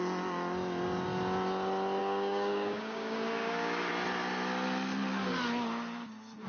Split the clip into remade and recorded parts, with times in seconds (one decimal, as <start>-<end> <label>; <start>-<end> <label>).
0.0-2.0 recorded; 2.0-3.9 remade; 3.9-6.5 recorded